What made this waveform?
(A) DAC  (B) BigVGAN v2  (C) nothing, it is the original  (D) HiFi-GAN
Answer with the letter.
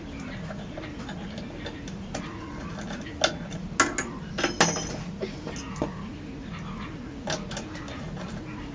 C